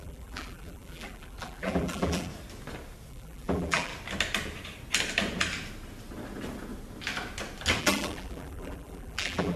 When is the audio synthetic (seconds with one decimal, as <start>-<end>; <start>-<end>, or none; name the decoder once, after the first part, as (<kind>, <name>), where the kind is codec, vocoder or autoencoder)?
0.0-2.3 (vocoder, BigVGAN v2); 3.1-3.9; 7.8-9.6